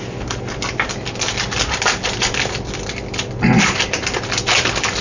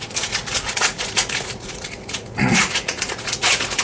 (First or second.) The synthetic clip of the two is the second